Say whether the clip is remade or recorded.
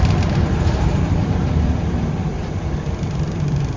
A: remade